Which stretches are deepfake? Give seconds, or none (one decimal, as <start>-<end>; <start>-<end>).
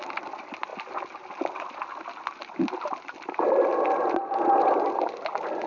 none